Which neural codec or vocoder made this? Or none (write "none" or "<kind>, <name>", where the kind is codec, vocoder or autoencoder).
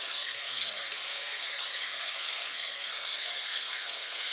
codec, SNAC